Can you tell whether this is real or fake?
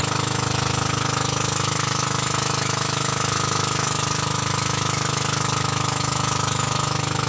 fake